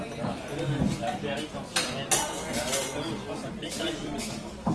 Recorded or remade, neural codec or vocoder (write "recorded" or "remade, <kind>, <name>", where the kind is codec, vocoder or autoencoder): recorded